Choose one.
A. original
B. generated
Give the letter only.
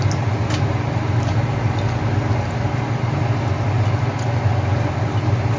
A